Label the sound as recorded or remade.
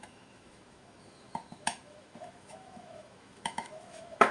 remade